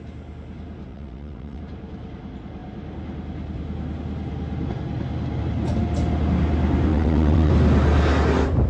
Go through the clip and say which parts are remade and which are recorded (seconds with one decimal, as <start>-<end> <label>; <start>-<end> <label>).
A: 0.0-0.9 recorded; 0.9-1.6 remade; 1.6-6.9 recorded; 6.9-7.5 remade; 7.5-8.7 recorded